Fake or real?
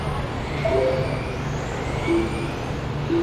real